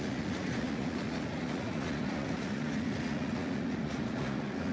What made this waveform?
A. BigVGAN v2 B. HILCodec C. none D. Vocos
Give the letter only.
D